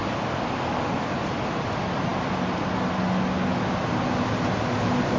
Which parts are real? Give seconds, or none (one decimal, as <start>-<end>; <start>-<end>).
0.0-5.2